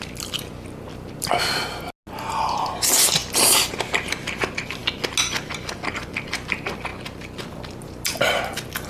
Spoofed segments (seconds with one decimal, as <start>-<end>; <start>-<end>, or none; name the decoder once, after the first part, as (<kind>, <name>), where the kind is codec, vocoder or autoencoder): none